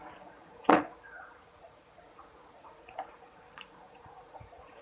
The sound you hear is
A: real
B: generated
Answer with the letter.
B